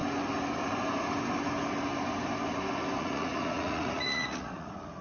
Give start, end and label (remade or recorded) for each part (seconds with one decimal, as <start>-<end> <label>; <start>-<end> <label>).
0.0-3.0 recorded; 3.0-5.0 remade